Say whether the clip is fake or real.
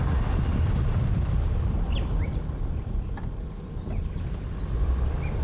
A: real